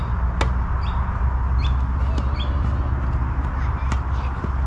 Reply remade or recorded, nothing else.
recorded